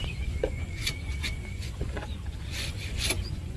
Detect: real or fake fake